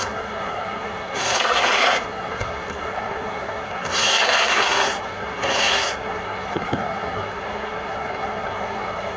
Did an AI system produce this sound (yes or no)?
yes